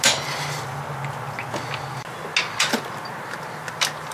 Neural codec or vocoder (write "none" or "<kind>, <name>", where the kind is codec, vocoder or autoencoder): none